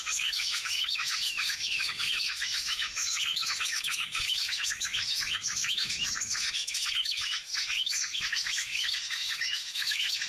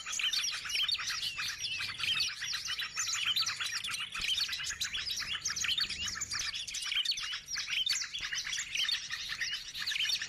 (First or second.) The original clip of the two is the second